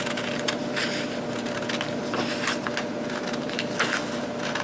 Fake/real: real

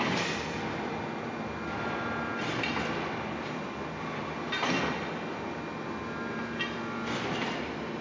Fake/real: real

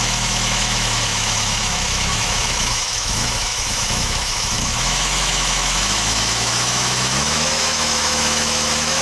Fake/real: fake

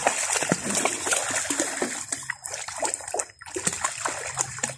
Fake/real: real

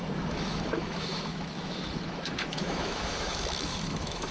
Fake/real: fake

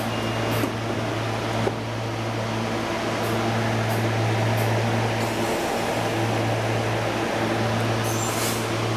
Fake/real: real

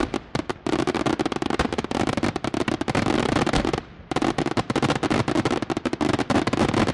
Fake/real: real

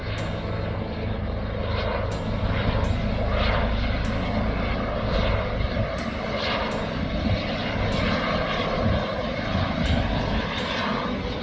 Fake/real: real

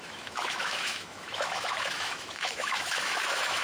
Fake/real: fake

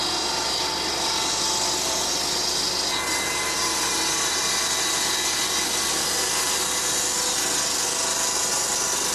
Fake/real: real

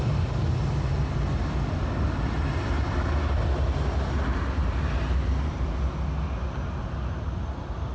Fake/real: real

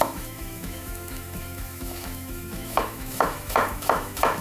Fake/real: fake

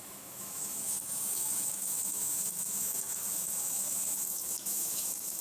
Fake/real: fake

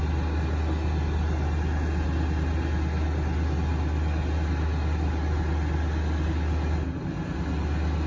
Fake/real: real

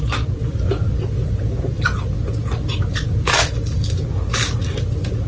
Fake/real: real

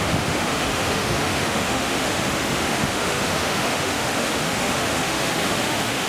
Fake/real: fake